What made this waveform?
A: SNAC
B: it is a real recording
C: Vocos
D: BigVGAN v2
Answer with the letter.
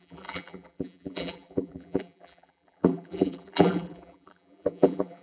D